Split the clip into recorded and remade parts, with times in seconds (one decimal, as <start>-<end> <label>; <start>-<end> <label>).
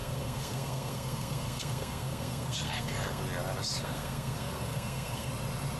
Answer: 0.0-3.2 remade; 3.2-3.8 recorded; 3.8-5.3 remade; 5.3-5.8 recorded